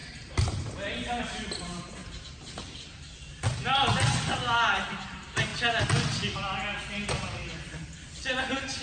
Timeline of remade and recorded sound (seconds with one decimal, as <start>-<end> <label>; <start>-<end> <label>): 0.0-2.0 remade; 2.0-4.9 recorded; 4.9-5.5 remade; 5.5-8.4 recorded; 8.4-8.8 remade